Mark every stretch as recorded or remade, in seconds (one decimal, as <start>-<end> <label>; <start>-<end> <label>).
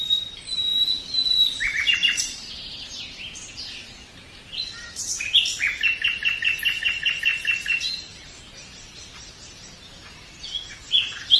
0.0-11.4 recorded